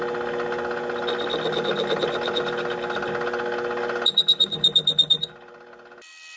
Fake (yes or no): no